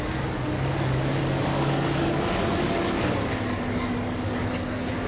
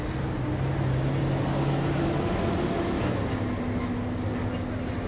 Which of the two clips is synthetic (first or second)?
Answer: first